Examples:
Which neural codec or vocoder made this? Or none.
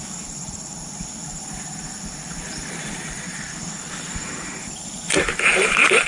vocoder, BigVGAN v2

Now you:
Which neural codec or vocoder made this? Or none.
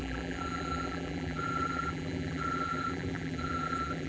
vocoder, BigVGAN v2